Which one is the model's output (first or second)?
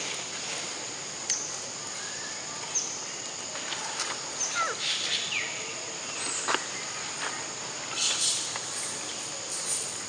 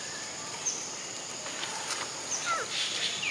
second